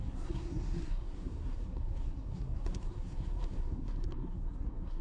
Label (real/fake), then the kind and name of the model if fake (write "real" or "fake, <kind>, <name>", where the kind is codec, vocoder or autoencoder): fake, codec, SNAC